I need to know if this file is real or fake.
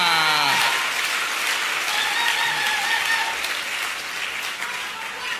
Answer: real